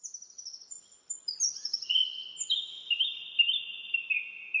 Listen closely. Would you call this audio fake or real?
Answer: real